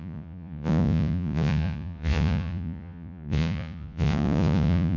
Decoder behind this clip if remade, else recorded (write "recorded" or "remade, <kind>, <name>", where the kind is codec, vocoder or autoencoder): remade, vocoder, Vocos